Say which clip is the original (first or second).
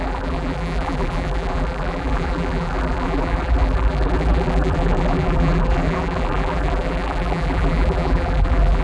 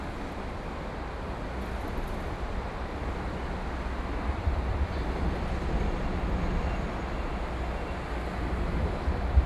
second